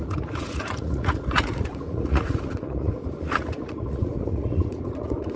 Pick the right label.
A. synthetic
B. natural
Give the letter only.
A